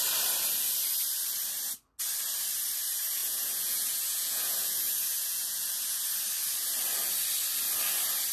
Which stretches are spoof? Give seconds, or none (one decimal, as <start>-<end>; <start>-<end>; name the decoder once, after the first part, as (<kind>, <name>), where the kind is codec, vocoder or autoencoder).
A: 3.2-6.0 (vocoder, Vocos)

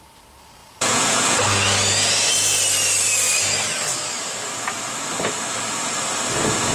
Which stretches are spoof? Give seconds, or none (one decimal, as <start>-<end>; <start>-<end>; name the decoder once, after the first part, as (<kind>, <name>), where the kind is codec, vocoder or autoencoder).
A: 0.6-1.4 (vocoder, Vocos)